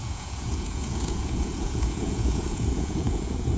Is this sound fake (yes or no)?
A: yes